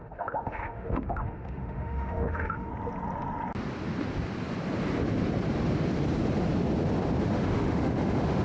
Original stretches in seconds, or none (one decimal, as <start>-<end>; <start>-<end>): 2.7-7.3